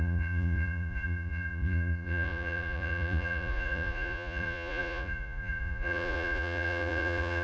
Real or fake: fake